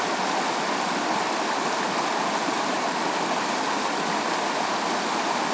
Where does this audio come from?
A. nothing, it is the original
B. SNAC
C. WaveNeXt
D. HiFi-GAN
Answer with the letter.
A